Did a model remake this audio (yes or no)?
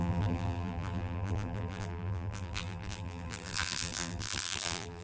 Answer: yes